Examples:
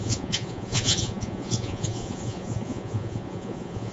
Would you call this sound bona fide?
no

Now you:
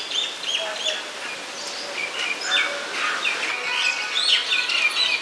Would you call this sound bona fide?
yes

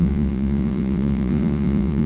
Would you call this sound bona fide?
no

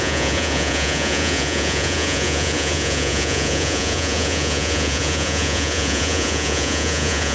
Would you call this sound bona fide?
no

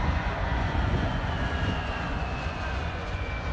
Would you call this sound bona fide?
no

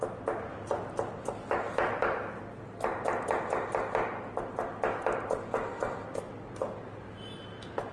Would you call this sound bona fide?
yes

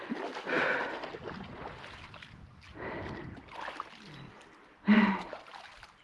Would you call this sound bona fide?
yes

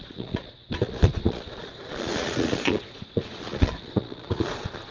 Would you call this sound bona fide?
no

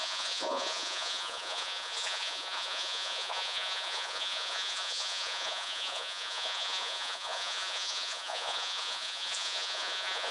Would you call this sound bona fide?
no